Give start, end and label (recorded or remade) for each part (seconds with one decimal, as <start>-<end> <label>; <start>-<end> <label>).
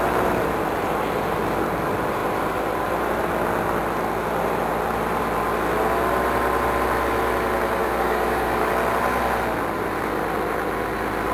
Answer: 0.0-7.8 recorded; 7.8-8.7 remade; 8.7-11.3 recorded